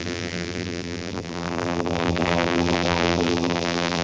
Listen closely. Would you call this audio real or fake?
fake